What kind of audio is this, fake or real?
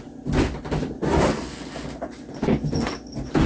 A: real